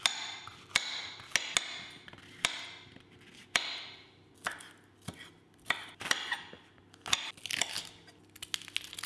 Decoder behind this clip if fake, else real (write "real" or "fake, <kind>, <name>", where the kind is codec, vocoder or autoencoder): real